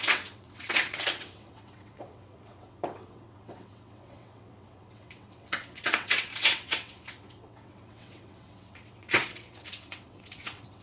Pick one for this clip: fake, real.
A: fake